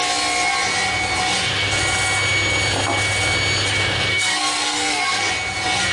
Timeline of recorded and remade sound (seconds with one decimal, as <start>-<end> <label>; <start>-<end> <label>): 0.0-4.1 recorded; 4.1-5.3 remade; 5.3-5.9 recorded